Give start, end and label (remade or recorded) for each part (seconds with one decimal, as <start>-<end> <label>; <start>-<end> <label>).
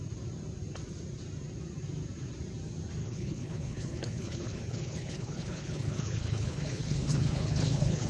0.0-3.0 recorded; 3.0-8.1 remade